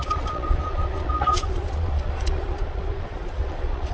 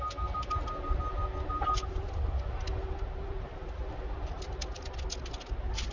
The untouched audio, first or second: second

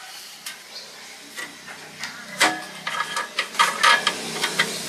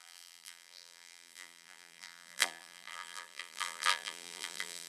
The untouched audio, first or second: first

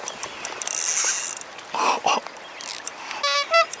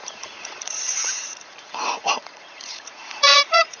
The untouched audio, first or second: first